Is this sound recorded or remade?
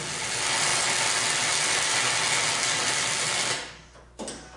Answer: recorded